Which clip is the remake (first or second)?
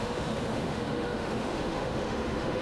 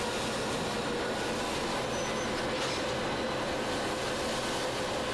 first